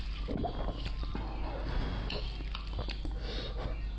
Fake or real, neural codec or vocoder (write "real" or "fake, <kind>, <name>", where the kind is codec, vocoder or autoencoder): real